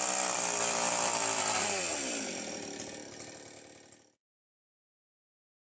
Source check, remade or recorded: recorded